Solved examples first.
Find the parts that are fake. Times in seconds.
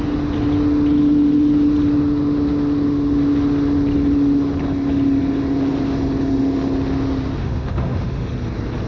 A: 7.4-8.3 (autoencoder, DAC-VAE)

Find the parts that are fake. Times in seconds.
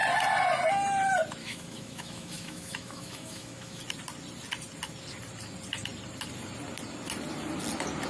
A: 1.4-3.8 (autoencoder, DAC-VAE)